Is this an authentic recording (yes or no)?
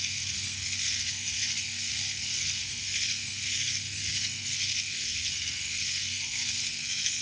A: no